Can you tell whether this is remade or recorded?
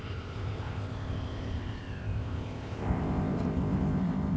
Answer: remade